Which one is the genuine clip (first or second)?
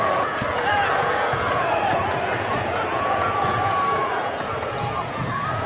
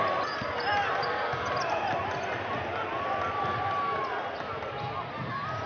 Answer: second